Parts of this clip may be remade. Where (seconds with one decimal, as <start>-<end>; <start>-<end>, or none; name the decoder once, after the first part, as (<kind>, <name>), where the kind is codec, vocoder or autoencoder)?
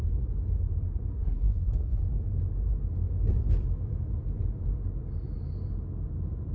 1.1-2.0 (codec, SNAC)